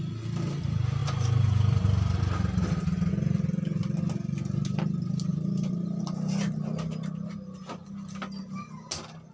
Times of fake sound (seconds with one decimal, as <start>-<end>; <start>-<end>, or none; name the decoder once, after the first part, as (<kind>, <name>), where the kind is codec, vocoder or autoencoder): 1.0-3.1 (vocoder, BigVGAN v2); 5.3-6.0